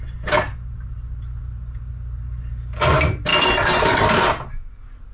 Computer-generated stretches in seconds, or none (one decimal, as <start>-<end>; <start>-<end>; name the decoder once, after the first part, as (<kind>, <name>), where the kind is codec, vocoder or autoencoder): 3.3-4.1 (vocoder, BigVGAN v2)